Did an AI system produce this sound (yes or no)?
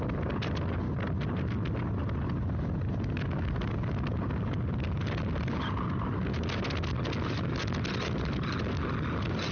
no